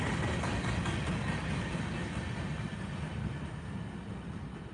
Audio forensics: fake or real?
real